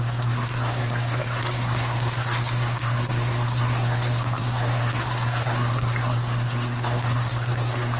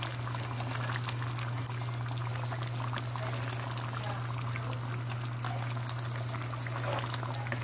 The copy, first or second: first